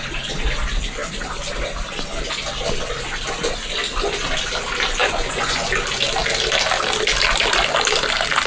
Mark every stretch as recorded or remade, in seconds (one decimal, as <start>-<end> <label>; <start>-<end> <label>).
0.0-5.0 recorded; 5.0-5.7 remade; 5.7-8.5 recorded